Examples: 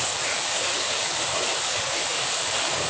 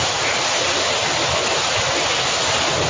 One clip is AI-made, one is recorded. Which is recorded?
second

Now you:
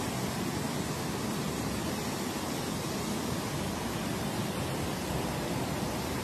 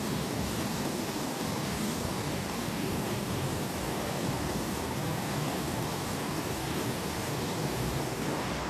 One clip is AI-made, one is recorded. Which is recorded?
first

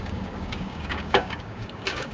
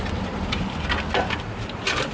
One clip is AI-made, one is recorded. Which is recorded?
second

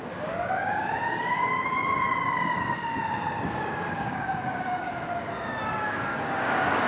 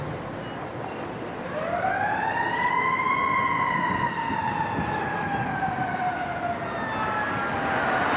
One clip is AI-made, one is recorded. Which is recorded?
second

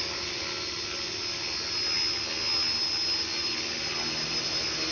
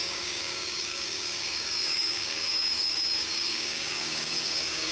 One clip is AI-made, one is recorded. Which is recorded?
first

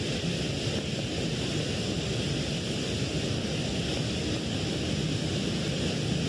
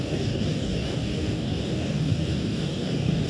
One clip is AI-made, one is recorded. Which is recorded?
first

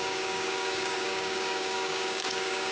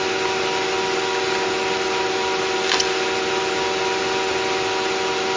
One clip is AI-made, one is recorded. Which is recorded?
second